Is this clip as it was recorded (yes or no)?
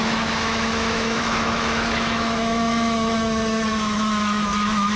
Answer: no